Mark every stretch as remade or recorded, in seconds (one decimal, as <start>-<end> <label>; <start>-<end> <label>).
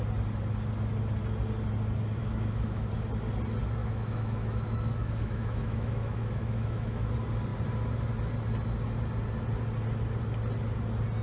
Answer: 0.0-2.2 recorded; 2.2-2.9 remade; 2.9-3.8 recorded; 3.8-7.1 remade; 7.1-11.2 recorded